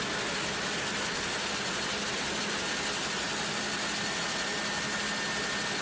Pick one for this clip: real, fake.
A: real